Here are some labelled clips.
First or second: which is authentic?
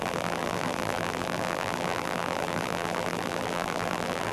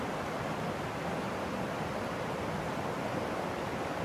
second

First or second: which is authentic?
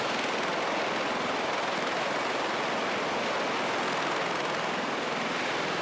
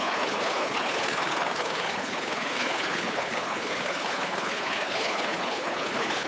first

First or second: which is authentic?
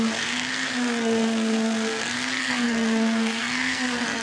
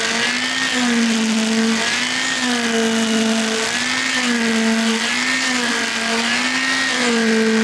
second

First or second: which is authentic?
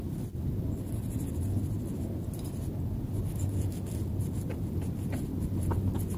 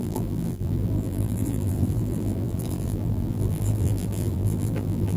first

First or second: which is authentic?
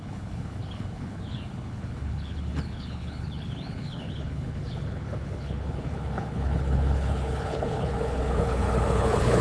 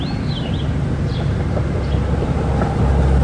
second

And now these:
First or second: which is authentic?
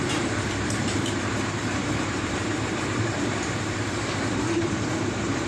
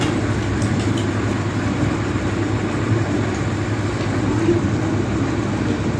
second